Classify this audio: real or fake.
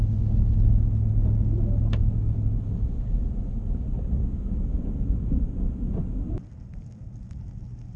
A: real